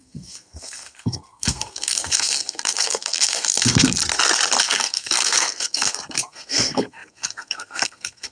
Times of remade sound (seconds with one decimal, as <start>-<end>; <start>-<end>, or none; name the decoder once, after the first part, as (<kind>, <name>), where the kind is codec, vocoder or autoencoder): 0.0-4.0 (codec, SNAC); 4.6-8.3